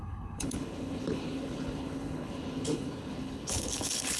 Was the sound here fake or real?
fake